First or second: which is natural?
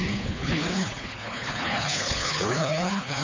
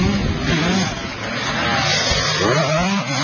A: second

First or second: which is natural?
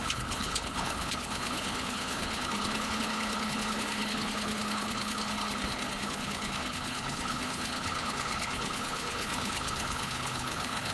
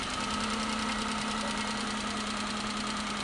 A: second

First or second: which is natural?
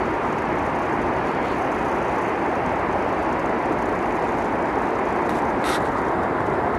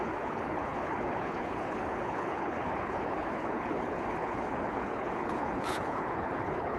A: first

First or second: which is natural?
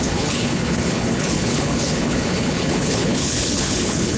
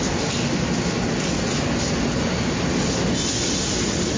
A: second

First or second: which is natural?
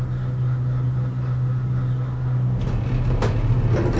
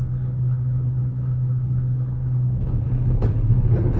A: first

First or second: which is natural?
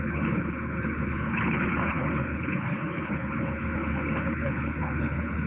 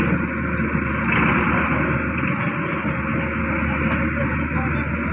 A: second